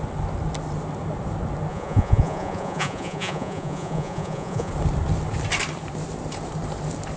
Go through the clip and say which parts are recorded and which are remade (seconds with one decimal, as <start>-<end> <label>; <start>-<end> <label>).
0.0-1.7 recorded; 1.7-4.7 remade; 4.7-7.2 recorded